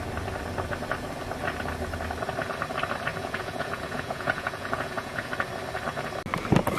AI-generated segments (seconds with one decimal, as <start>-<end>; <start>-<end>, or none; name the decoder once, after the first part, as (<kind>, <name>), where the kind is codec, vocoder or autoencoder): 3.1-5.3 (vocoder, Vocos)